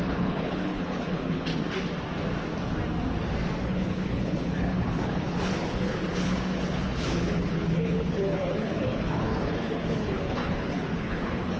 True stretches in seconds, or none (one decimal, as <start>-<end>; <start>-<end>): 1.5-3.6